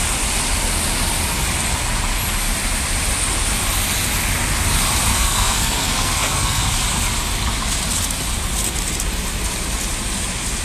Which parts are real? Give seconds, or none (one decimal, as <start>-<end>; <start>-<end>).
0.0-5.1; 6.7-10.6